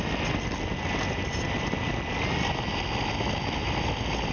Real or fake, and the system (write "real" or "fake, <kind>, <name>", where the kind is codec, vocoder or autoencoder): real